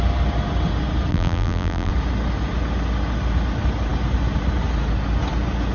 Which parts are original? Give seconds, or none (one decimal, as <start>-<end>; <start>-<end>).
0.0-1.1; 1.9-5.7